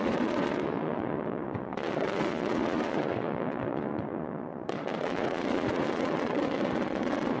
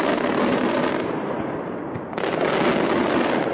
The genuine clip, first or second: second